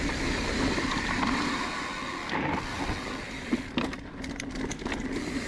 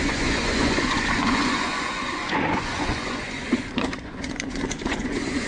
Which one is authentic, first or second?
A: first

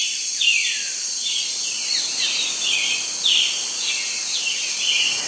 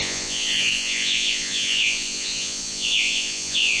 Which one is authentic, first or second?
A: first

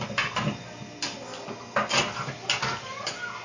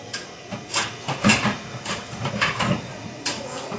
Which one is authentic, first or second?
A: first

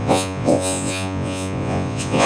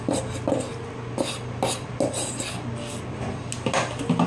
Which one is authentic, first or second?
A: second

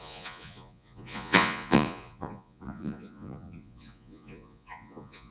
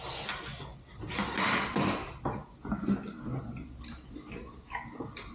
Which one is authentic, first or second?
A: second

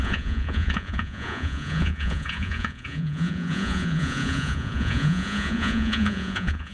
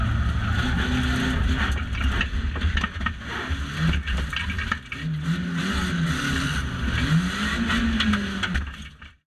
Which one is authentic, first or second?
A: second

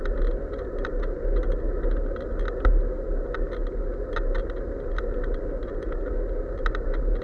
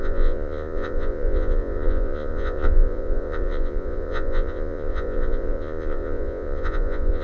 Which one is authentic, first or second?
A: first